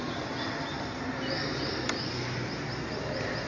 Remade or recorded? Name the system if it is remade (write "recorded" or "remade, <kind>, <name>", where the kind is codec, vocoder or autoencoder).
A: recorded